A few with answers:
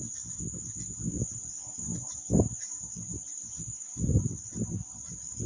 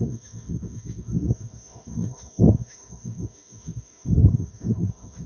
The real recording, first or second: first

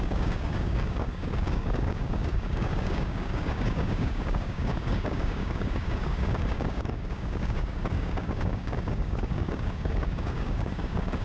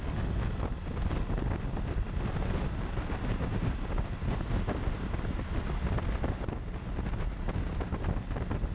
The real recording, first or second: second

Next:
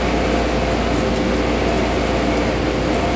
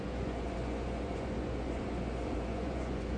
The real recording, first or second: first